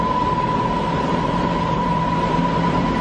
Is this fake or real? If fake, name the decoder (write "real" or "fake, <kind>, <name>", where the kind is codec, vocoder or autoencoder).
fake, vocoder, BigVGAN v2